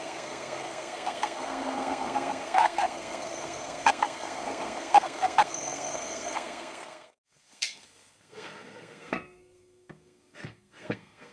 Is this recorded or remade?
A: remade